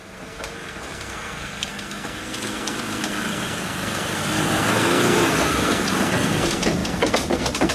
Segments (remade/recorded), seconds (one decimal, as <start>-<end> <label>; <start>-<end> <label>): 0.0-7.7 remade